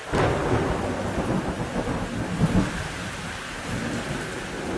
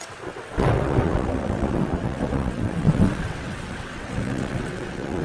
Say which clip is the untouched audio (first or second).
first